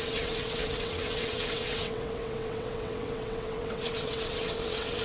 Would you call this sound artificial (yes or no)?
yes